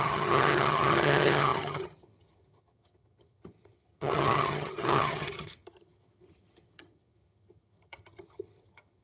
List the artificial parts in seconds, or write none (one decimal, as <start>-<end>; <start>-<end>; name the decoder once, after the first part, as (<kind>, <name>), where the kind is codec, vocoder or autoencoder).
0.0-9.0 (vocoder, HiFi-GAN)